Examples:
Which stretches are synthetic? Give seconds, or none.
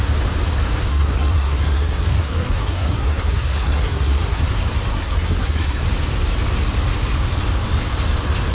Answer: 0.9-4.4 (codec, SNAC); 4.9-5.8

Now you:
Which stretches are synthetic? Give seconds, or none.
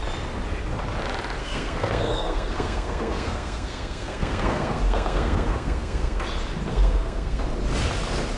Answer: 1.4-6.2 (codec, SNAC); 6.7-7.4